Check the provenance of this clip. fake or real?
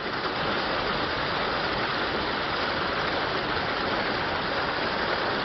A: real